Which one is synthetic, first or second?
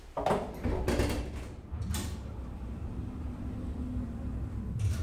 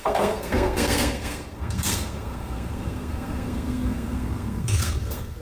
second